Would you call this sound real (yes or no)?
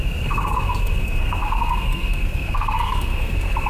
no